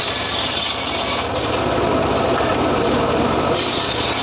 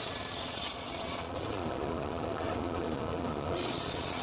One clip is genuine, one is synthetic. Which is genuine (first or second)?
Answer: first